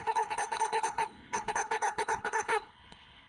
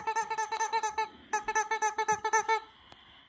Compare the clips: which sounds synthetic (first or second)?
first